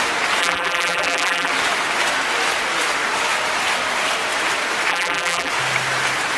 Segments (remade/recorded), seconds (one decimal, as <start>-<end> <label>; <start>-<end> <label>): 0.0-0.4 recorded; 0.4-1.5 remade; 1.5-4.9 recorded; 4.9-5.5 remade; 5.5-6.4 recorded